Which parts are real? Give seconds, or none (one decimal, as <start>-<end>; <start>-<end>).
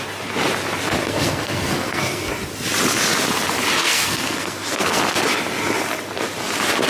0.0-1.0; 2.3-3.8; 5.0-6.9